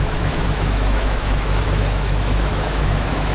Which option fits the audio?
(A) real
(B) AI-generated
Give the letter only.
B